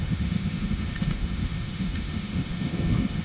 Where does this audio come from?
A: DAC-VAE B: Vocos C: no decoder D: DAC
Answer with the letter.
A